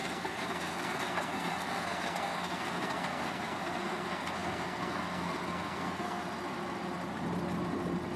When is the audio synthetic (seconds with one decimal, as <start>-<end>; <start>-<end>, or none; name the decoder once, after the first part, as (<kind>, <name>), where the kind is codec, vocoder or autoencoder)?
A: 0.0-6.2 (codec, SNAC)